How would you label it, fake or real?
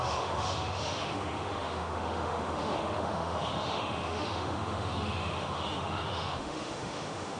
fake